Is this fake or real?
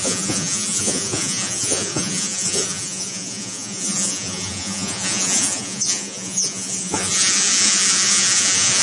fake